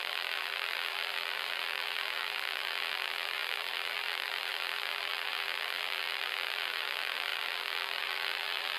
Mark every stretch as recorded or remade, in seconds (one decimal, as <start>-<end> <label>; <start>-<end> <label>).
0.0-8.8 remade